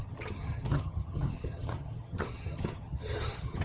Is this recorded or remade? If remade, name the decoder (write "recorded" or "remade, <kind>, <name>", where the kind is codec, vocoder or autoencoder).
remade, vocoder, HiFi-GAN